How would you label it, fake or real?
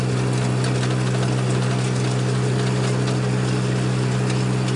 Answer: real